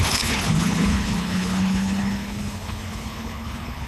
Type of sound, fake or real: fake